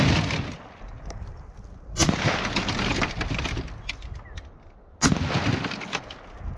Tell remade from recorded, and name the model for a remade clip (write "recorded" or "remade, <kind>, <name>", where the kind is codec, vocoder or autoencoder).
recorded